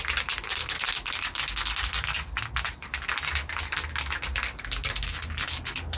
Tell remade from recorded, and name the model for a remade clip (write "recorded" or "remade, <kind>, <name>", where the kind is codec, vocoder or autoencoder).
recorded